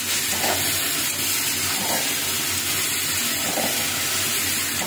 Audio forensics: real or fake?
real